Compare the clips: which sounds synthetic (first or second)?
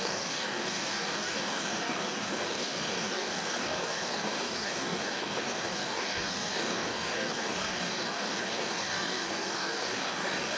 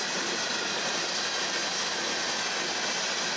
first